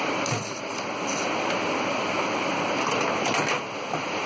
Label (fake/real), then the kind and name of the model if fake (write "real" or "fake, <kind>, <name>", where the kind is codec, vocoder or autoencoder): real